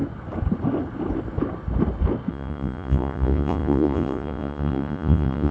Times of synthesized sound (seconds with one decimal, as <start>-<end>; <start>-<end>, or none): 2.3-5.5